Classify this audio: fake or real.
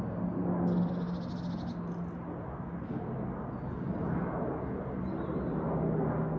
real